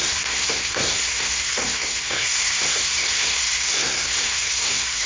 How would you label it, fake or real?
fake